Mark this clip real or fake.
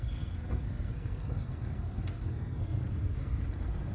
fake